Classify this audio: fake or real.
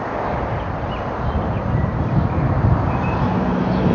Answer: real